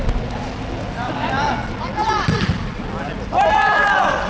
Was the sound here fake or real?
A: real